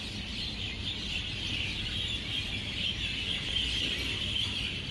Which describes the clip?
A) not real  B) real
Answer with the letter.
B